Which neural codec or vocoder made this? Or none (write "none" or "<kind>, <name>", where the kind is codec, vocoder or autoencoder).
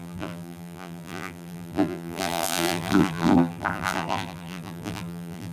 vocoder, BigVGAN v2